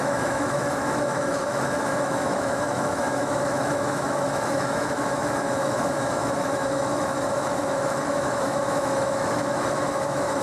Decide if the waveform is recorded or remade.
remade